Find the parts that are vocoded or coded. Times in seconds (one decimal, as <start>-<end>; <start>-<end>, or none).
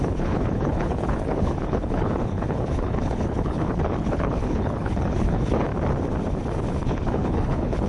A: 0.0-5.7; 6.7-7.9